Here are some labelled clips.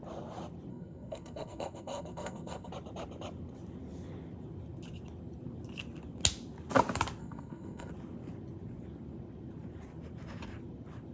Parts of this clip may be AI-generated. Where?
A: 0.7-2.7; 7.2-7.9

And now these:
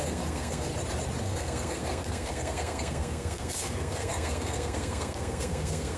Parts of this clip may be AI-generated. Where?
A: 0.0-0.7; 1.2-6.0